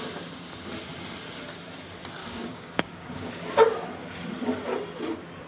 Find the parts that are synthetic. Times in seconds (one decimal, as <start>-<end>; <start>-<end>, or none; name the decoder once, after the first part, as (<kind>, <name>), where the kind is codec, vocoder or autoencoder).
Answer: 2.2-3.3 (codec, DAC)